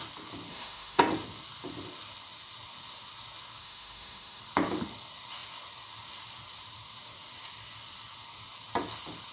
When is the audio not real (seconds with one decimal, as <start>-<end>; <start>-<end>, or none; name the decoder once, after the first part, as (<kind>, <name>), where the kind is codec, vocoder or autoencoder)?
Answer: 0.5-1.0 (autoencoder, DAC-VAE); 3.6-4.4